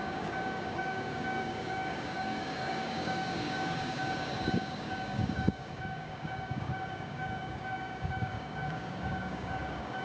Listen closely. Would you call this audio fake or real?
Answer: fake